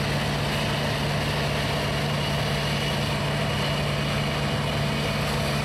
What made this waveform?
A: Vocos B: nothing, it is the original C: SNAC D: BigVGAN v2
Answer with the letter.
B